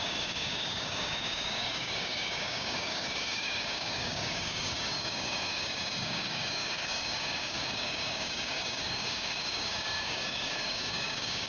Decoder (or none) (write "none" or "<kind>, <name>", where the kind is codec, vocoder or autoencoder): codec, DAC